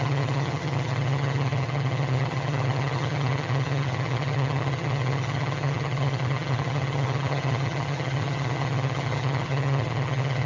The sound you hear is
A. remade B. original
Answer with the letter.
A